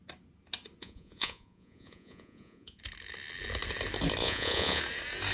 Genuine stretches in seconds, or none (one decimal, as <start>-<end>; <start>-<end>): 0.0-0.8; 2.8-4.2; 4.8-5.3